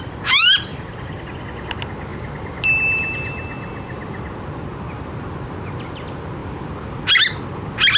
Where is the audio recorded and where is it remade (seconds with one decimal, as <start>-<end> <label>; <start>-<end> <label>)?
0.0-0.7 recorded; 0.7-1.4 remade; 1.4-2.1 recorded; 2.1-4.2 remade; 4.2-6.4 recorded; 6.4-7.0 remade; 7.0-8.0 recorded